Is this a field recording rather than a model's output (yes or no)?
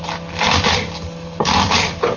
yes